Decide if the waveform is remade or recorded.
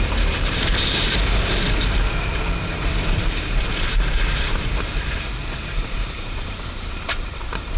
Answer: remade